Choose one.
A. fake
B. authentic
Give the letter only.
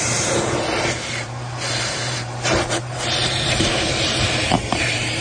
A